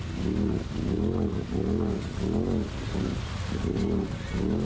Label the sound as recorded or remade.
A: recorded